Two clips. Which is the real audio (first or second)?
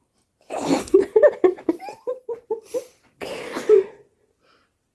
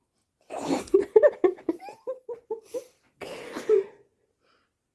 second